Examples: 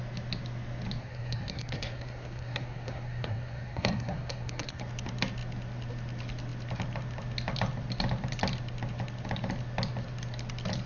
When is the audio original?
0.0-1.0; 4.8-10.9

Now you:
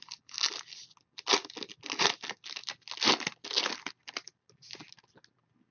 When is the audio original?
0.0-5.7

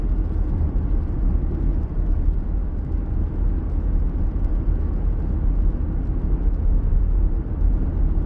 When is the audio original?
0.0-2.6; 3.1-8.3

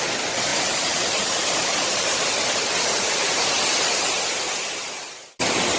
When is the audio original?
0.0-0.5; 4.0-5.8